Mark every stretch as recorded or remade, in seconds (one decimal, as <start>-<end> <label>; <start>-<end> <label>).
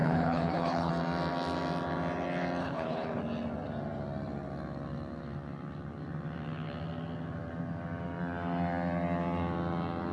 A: 0.0-0.9 remade; 0.9-2.6 recorded; 2.6-3.2 remade; 3.2-10.1 recorded